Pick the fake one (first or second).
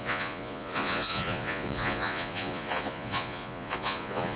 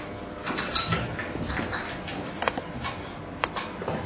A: first